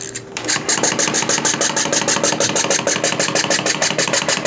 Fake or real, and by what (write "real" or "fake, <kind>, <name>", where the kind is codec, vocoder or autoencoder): real